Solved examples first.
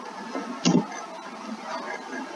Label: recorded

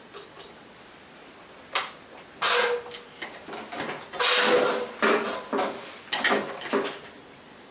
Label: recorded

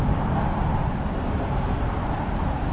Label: remade